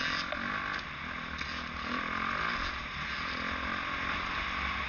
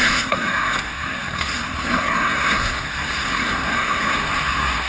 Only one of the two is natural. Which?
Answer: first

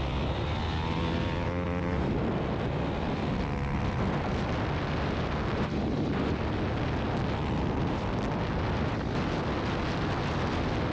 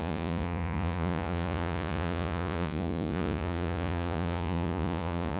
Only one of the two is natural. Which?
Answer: first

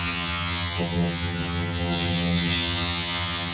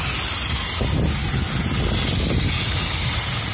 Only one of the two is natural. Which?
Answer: second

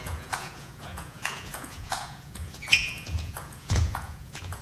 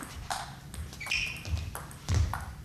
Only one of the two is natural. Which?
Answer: second